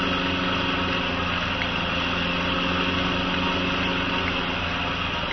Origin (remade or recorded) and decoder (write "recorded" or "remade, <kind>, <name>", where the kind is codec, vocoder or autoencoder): recorded